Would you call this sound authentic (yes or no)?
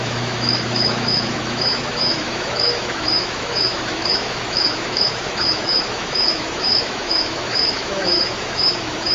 no